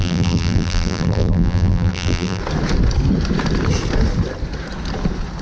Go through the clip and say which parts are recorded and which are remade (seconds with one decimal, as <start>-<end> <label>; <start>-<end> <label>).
0.0-2.4 remade; 2.4-5.4 recorded

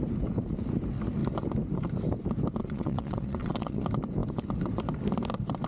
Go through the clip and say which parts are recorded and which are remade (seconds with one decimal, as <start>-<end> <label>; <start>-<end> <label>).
0.0-2.6 recorded; 2.6-3.8 remade; 3.8-5.7 recorded